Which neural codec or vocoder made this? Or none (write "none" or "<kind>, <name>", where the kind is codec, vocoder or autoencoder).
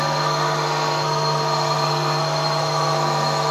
codec, SNAC